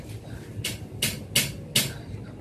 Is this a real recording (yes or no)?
yes